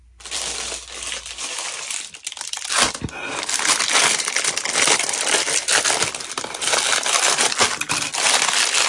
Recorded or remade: recorded